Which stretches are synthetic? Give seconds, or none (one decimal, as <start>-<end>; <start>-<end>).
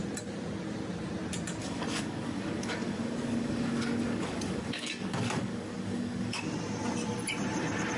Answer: 1.6-6.4